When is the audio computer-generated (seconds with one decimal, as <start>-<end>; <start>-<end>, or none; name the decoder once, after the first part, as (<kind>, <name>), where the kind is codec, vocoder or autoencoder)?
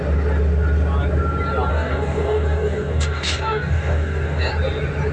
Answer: 1.7-4.5 (codec, DAC)